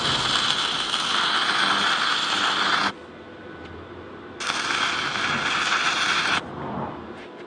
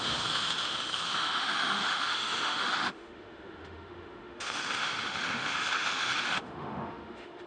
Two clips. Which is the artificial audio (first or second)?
second